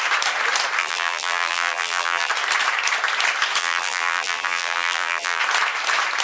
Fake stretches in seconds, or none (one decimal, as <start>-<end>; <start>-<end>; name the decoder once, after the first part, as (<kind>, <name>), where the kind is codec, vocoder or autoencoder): 0.8-2.3 (vocoder, BigVGAN v2); 3.6-5.4